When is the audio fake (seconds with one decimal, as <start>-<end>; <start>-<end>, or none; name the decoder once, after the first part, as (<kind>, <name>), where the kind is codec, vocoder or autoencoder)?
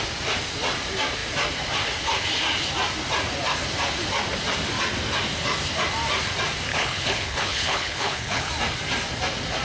6.7-8.5 (codec, HILCodec)